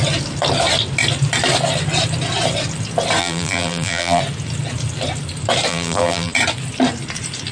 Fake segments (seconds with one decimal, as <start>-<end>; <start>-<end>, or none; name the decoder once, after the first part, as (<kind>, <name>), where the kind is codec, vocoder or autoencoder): 3.2-4.2 (vocoder, BigVGAN v2); 5.7-6.3

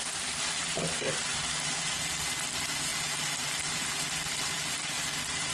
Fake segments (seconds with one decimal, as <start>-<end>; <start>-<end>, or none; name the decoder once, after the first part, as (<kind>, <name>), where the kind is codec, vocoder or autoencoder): none

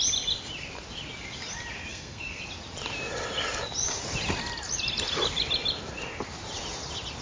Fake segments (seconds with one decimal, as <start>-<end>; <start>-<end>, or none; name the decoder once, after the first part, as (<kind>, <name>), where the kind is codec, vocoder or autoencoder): 1.9-2.4 (codec, SNAC)

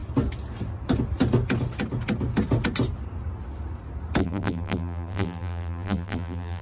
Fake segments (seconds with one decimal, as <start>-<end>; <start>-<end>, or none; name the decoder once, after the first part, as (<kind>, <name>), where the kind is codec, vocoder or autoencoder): 4.2-6.6 (vocoder, BigVGAN v2)